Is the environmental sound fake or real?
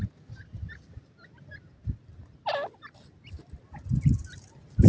real